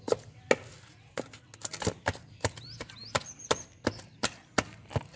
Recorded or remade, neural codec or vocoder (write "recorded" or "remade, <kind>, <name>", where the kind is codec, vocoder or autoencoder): recorded